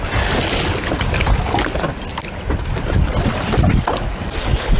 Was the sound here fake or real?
real